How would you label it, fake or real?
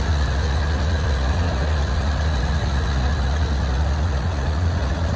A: fake